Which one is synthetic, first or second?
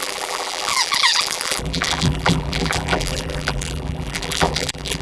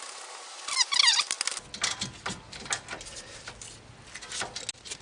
first